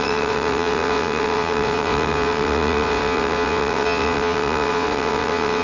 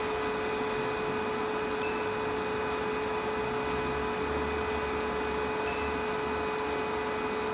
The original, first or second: second